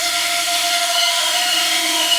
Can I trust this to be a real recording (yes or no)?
no